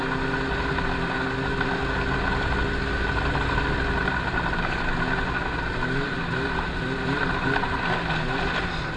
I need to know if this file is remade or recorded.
recorded